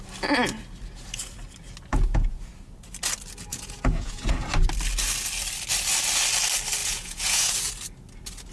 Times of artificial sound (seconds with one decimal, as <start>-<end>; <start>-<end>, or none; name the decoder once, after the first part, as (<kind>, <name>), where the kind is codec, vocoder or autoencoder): 1.9-2.5 (vocoder, Vocos); 3.5-4.3; 6.8-7.7